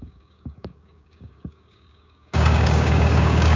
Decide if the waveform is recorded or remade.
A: remade